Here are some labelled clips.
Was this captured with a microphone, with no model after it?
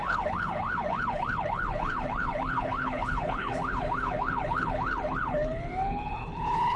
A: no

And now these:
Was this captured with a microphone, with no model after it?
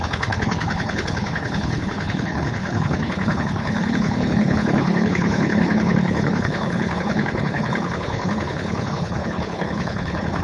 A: no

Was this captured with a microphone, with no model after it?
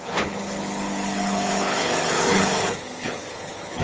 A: no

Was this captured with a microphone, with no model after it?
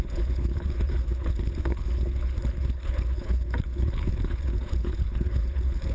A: no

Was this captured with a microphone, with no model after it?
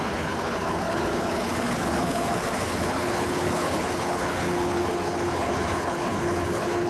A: no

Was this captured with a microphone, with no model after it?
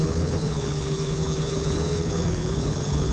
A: no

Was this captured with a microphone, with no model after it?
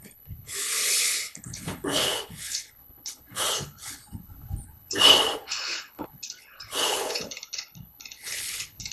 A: no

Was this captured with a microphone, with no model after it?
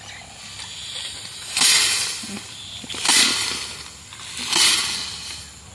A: yes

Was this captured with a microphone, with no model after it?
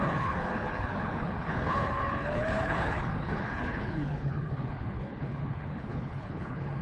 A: no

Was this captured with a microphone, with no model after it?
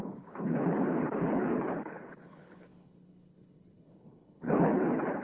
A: no